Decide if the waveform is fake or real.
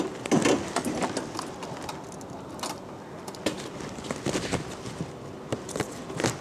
real